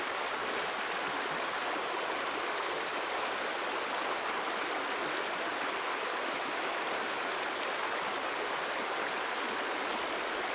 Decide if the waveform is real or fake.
real